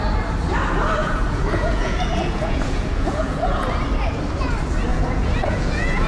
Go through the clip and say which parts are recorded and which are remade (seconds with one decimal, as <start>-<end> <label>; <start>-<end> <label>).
0.0-1.0 recorded; 1.0-3.7 remade; 3.7-4.9 recorded; 4.9-6.1 remade